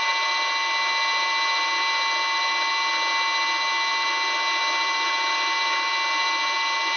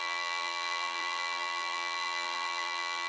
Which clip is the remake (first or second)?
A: second